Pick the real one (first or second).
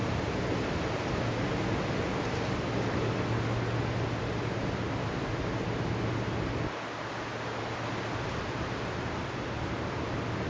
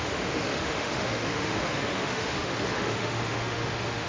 first